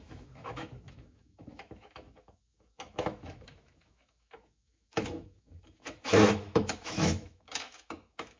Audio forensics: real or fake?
fake